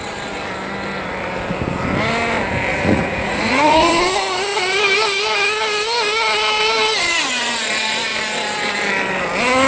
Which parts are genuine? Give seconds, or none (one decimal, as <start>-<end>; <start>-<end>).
0.0-2.7; 3.9-9.7